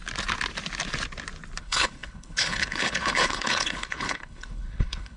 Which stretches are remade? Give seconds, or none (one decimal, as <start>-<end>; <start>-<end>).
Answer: 1.6-5.2